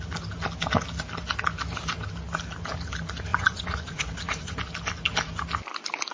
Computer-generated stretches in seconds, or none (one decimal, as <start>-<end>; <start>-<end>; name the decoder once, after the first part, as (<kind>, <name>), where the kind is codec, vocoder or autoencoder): 3.3-4.6 (vocoder, Vocos)

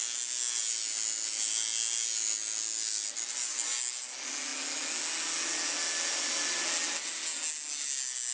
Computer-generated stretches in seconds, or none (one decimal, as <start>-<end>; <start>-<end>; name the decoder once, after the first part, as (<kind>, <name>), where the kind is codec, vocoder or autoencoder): none

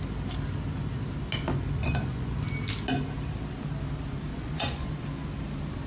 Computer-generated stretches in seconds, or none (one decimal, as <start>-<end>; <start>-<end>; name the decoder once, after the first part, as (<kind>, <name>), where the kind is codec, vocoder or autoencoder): 1.8-2.4 (vocoder, Vocos); 4.3-4.9

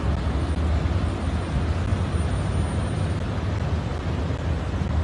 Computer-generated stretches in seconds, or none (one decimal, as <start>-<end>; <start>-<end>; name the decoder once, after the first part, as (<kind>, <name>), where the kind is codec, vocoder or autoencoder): none

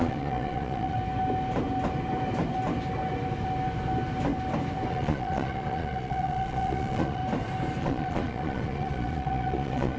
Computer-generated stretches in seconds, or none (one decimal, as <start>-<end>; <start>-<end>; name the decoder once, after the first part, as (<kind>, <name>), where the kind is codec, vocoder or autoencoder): 0.0-1.0 (vocoder, Vocos); 4.9-7.2; 7.8-10.0